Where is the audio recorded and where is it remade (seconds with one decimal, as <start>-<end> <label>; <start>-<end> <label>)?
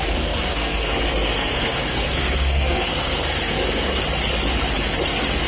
0.0-4.0 remade; 4.0-5.5 recorded